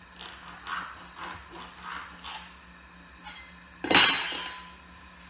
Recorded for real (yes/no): yes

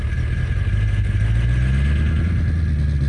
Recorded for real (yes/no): yes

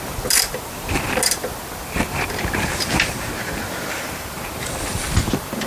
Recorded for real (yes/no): no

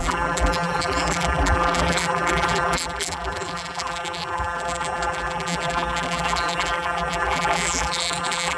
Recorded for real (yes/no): no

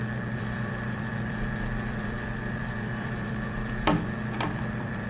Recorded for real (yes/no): no